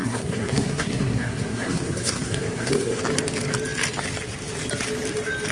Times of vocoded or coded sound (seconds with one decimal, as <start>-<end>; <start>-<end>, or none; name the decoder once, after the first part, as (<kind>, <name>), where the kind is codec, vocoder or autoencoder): 0.0-3.0 (codec, SNAC)